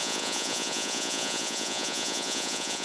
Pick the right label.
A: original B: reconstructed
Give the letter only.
B